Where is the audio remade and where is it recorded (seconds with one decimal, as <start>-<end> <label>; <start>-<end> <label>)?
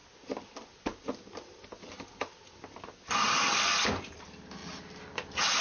0.0-5.6 recorded